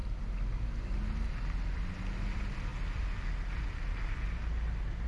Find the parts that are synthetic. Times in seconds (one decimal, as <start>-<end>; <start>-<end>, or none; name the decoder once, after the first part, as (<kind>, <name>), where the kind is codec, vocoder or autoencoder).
none